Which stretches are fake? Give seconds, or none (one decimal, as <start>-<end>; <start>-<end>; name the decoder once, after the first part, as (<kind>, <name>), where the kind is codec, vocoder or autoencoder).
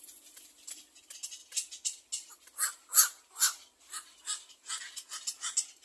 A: none